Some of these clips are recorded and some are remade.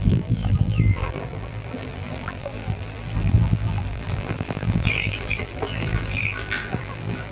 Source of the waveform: remade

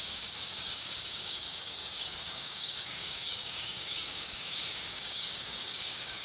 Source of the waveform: remade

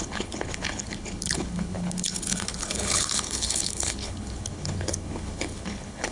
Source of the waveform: remade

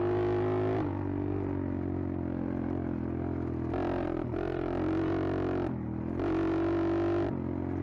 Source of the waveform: recorded